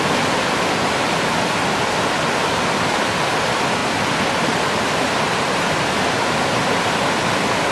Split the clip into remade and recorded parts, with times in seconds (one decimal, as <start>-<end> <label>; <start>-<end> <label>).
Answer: 0.0-7.7 recorded